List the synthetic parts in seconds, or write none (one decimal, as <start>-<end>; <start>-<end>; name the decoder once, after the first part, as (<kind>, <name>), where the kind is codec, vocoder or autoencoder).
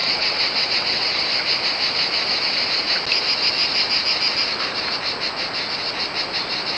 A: 0.0-1.2 (vocoder, WaveNeXt)